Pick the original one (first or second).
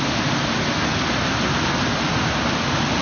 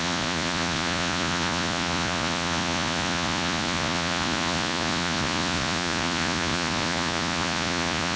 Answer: first